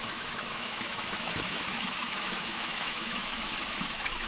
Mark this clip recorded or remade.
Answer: remade